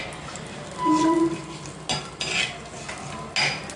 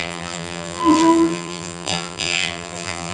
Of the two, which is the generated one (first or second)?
second